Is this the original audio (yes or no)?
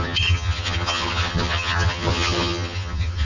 no